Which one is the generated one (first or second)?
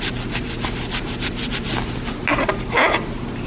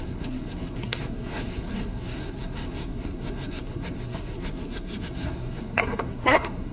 second